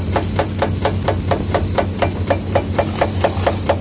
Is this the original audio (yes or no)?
yes